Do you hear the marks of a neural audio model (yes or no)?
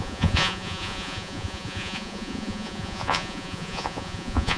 yes